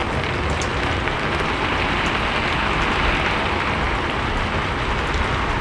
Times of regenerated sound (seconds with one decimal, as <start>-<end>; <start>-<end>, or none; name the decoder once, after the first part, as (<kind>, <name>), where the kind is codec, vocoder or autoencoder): none